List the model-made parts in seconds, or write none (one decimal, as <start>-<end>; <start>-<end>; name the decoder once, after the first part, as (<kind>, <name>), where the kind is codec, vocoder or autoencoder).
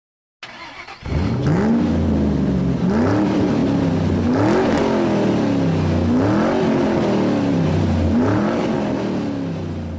7.5-8.7 (vocoder, BigVGAN v2)